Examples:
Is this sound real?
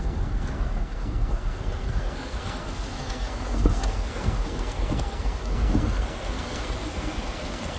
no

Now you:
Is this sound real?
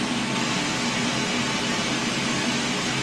yes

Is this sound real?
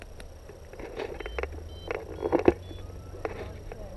yes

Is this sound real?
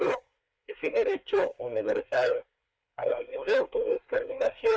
no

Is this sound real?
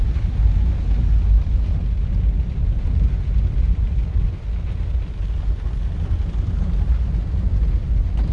yes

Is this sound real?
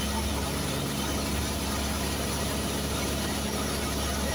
yes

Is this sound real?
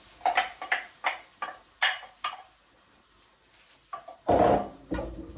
yes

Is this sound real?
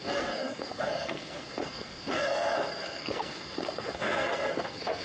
no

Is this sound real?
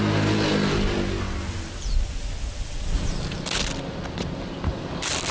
yes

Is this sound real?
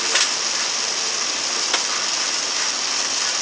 yes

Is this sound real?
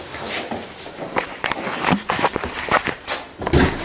yes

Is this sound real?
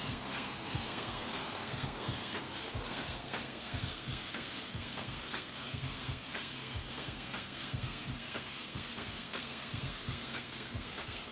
no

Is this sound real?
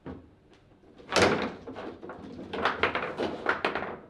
yes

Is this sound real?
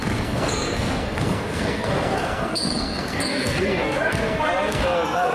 no